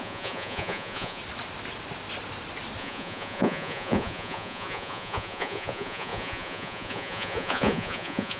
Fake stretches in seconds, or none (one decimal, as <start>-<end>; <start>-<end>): 0.0-1.2; 2.8-8.4